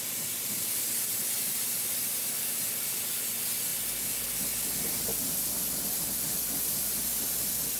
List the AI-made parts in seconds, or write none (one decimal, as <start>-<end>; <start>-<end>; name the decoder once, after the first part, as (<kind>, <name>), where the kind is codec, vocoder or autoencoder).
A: none